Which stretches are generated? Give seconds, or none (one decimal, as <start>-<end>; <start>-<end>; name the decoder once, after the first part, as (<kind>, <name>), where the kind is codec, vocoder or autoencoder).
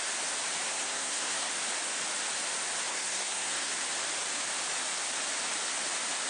0.7-1.5 (codec, SNAC); 2.9-3.7